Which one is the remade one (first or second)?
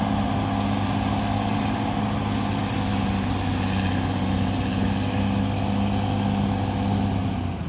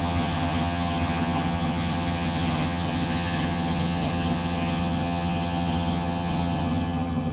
second